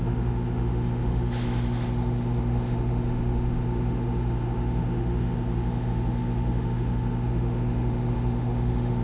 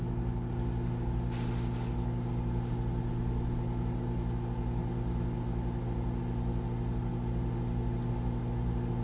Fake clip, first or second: first